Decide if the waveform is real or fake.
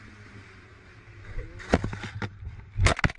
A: real